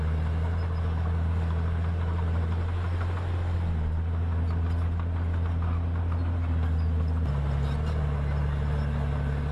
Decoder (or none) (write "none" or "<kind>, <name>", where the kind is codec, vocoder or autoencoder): none